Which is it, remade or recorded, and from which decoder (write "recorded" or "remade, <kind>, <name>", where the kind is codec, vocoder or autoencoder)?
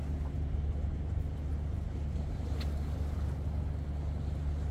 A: recorded